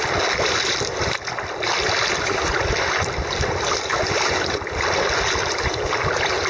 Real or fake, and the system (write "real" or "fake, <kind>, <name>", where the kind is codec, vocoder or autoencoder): real